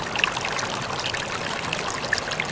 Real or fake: real